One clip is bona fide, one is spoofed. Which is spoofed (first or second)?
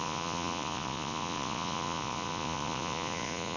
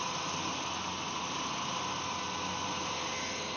first